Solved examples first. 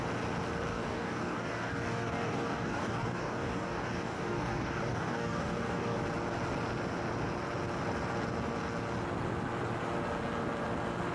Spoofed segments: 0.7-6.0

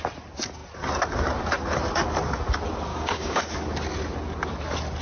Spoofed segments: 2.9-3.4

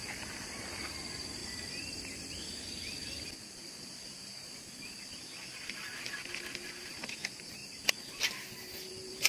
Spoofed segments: 7.6-8.9

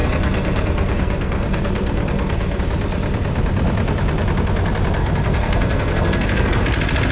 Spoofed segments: 0.0-2.6; 5.0-6.6

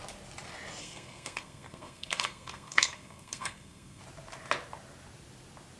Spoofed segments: 0.8-4.0